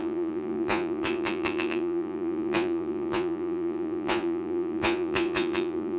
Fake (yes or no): yes